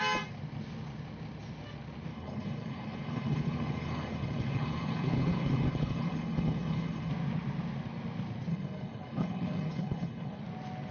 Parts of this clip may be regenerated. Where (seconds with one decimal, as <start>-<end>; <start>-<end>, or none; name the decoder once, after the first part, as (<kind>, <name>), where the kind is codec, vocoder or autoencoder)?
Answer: 2.1-7.1 (codec, HILCodec); 8.5-10.4

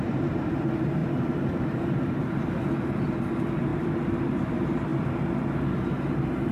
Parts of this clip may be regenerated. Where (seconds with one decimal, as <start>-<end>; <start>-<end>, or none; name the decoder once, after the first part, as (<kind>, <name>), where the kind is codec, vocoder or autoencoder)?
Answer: 0.0-1.0 (vocoder, BigVGAN v2); 3.2-4.9

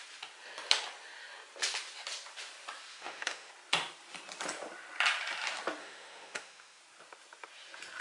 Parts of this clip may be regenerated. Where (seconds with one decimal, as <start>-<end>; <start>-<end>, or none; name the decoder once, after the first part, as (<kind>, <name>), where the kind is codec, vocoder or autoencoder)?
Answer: 2.9-3.5 (autoencoder, DAC-VAE); 5.8-6.8

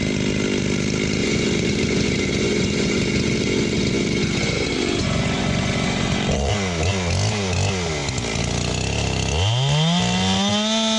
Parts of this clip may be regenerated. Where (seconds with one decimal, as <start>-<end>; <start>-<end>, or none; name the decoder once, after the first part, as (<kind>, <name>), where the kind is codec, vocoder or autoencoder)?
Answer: 1.2-6.5 (vocoder, Vocos)

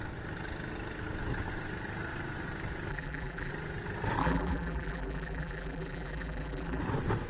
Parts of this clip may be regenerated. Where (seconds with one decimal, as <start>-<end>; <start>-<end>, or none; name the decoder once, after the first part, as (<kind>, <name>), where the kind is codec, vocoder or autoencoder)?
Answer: 2.9-3.5 (vocoder, BigVGAN v2); 4.2-6.8

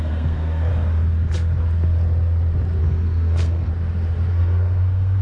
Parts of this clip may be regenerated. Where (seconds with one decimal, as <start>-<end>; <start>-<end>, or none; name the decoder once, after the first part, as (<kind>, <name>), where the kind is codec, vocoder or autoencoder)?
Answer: 0.0-0.7 (codec, SNAC); 2.8-3.7; 4.3-5.2